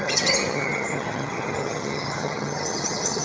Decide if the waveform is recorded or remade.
remade